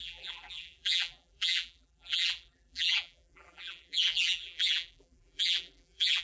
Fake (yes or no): yes